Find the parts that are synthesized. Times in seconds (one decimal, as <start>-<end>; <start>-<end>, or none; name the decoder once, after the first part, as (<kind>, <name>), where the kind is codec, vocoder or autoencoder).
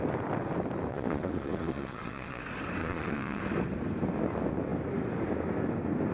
0.9-2.4 (vocoder, Vocos); 2.8-3.4